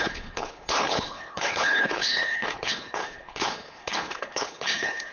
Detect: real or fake fake